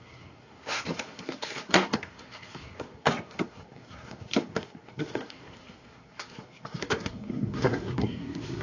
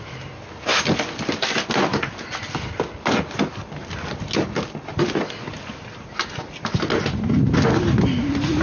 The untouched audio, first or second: second